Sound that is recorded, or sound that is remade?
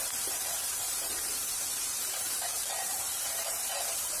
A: remade